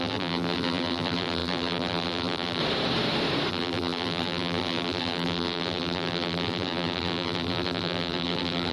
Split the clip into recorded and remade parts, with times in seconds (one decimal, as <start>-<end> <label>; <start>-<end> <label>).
0.0-2.6 remade; 2.6-3.5 recorded; 3.5-8.7 remade